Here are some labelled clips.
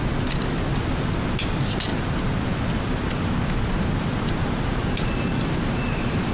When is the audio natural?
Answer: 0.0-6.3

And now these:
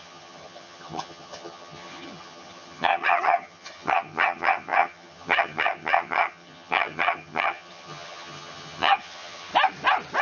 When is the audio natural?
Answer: 9.5-10.2

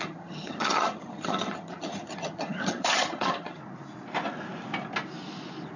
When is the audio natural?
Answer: 3.6-5.8

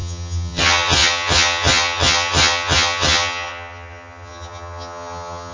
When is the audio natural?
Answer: none

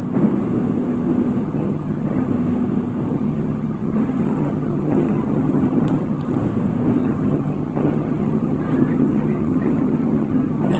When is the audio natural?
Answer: 0.0-1.4; 2.3-3.1; 6.4-7.0

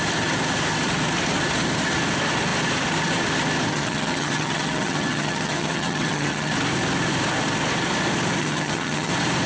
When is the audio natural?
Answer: 0.0-3.7; 6.5-8.4; 9.1-9.5